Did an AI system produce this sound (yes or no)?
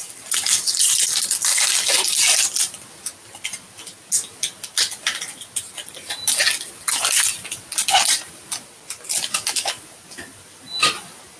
no